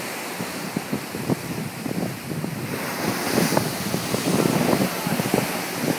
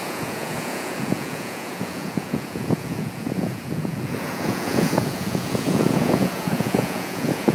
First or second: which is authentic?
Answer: first